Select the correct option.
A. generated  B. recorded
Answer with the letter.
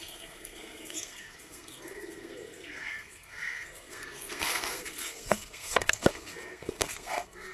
A